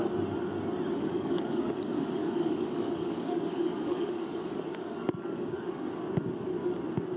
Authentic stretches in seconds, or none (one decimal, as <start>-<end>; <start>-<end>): 0.0-1.0; 1.7-2.2; 5.8-7.2